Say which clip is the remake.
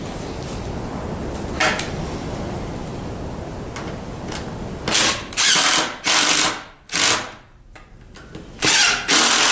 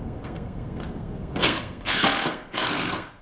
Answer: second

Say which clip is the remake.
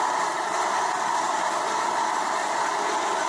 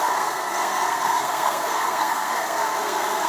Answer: second